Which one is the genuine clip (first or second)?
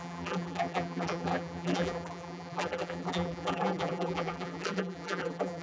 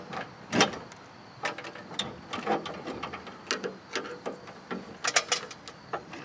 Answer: second